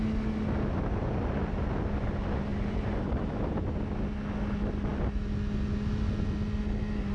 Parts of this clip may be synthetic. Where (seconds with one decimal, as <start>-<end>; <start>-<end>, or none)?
2.5-3.8